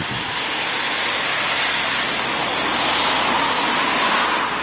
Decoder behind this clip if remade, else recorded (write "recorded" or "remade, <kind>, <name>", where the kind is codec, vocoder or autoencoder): recorded